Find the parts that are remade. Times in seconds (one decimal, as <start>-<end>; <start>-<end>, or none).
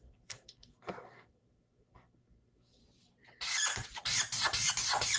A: 0.0-2.8